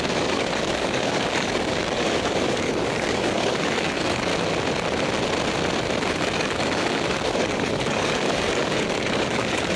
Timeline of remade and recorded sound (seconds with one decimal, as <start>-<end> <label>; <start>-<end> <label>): 0.0-4.3 remade; 4.3-6.1 recorded; 6.1-9.8 remade